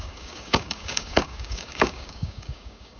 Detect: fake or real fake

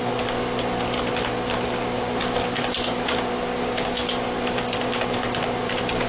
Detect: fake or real real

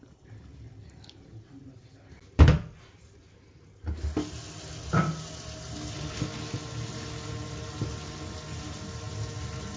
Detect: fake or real real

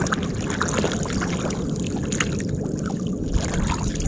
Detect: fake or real real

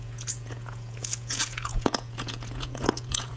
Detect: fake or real fake